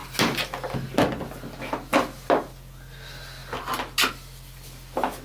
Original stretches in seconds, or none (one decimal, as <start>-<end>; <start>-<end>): 0.0-5.2